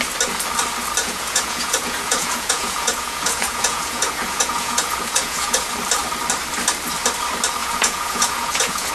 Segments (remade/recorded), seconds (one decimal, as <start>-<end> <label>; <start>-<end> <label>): 0.0-1.0 recorded; 1.0-5.7 remade; 5.7-7.6 recorded; 7.6-8.9 remade

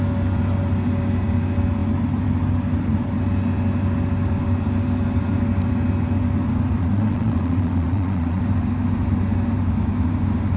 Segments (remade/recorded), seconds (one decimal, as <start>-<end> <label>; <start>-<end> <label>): 0.0-6.8 recorded; 6.8-8.4 remade; 8.4-10.6 recorded

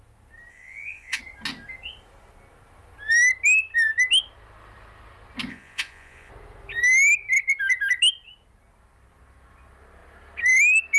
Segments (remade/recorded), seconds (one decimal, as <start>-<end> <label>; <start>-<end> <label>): 0.0-0.5 recorded; 0.5-1.2 remade; 1.2-5.5 recorded; 5.5-6.3 remade; 6.3-11.0 recorded

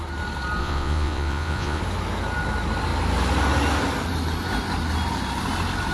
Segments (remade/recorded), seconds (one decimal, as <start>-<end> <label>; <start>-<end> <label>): 0.0-0.6 recorded; 0.6-1.8 remade; 1.8-5.9 recorded

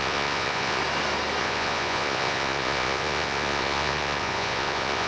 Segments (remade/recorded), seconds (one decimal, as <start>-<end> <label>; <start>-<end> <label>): 0.0-0.8 remade; 0.8-1.4 recorded; 1.4-5.1 remade

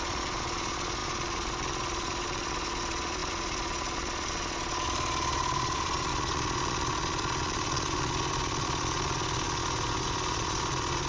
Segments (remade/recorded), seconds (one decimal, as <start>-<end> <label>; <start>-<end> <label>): 0.0-11.1 remade

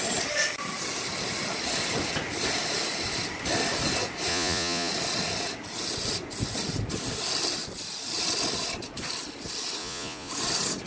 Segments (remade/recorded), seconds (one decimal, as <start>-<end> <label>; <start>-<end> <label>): 0.0-4.3 recorded; 4.3-4.9 remade; 4.9-9.8 recorded; 9.8-10.3 remade; 10.3-10.9 recorded

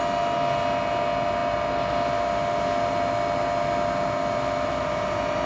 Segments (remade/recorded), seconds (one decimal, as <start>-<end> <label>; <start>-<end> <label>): 0.0-5.5 recorded